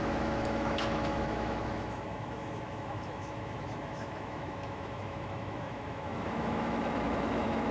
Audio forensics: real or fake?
fake